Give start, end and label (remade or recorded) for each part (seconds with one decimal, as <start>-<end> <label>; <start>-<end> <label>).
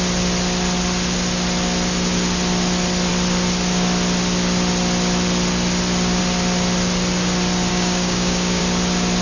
0.0-7.7 recorded; 7.7-8.6 remade; 8.6-9.2 recorded